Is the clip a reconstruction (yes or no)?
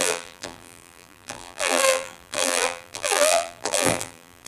yes